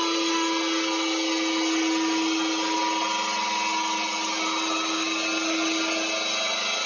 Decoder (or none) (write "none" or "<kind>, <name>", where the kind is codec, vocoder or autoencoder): none